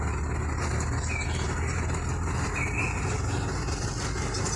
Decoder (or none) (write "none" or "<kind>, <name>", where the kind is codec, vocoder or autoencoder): none